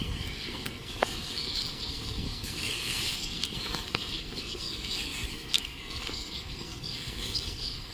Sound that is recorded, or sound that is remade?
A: remade